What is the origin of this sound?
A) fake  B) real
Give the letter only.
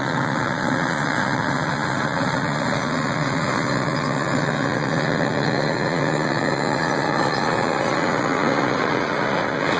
A